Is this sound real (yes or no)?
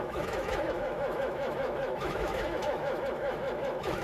no